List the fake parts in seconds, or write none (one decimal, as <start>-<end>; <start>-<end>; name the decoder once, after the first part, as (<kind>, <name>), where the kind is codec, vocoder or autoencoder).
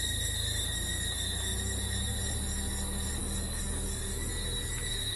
3.2-4.3 (codec, DAC)